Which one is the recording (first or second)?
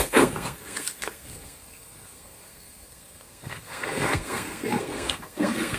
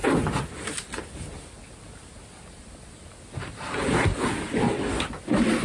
second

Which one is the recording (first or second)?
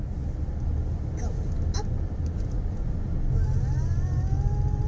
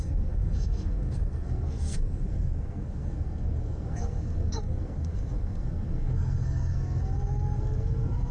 first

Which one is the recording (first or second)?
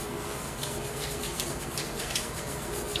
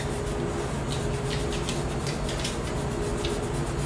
second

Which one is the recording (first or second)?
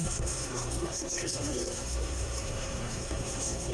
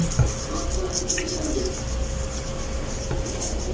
second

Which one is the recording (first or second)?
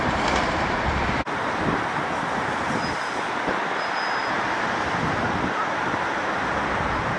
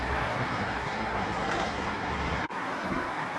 first